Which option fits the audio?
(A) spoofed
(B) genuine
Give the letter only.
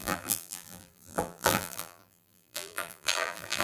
A